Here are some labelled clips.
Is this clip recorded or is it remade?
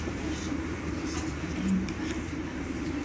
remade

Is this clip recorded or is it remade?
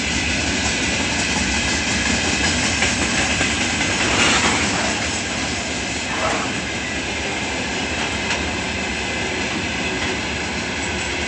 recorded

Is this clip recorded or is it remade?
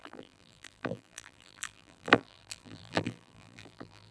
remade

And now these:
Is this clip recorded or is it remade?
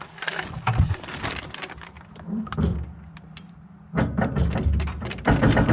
remade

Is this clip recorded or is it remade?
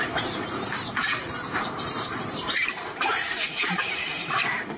remade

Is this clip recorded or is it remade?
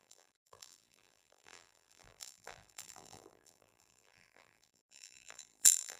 remade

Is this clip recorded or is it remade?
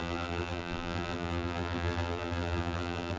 remade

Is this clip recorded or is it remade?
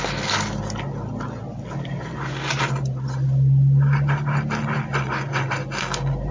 recorded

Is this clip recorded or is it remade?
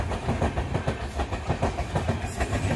recorded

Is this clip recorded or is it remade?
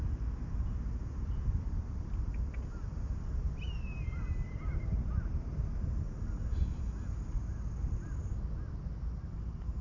recorded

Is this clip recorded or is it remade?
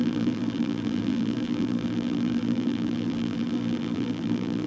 remade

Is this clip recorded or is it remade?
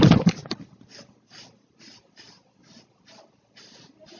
remade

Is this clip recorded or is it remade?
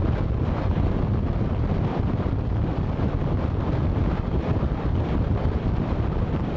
remade